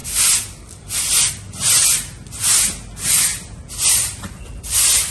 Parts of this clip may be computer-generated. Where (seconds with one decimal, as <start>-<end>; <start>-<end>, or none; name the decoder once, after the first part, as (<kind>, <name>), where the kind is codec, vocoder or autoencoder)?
none